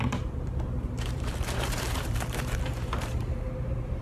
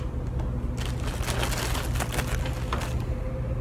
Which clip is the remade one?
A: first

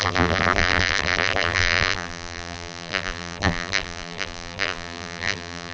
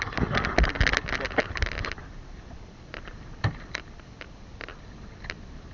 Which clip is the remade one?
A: first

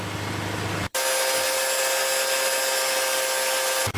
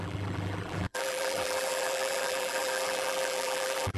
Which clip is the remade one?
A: second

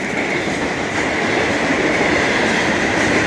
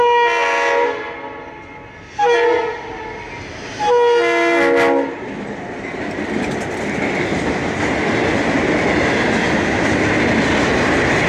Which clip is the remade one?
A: first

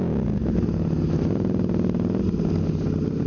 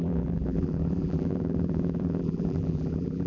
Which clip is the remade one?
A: second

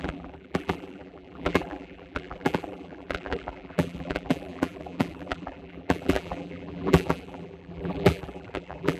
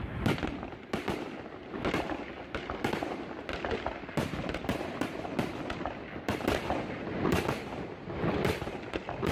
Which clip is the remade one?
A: first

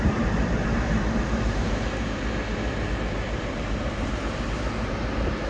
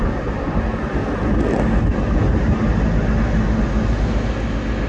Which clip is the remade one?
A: first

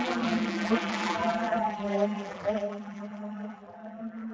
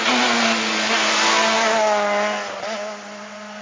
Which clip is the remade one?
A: first